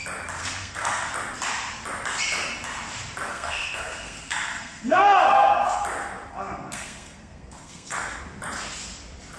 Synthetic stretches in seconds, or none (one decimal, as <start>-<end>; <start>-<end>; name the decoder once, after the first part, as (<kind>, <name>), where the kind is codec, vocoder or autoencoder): 0.4-1.1 (codec, SNAC); 3.3-5.8; 6.3-8.2